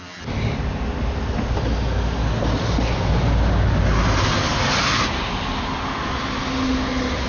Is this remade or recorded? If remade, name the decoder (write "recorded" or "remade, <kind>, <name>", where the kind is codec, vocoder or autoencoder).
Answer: recorded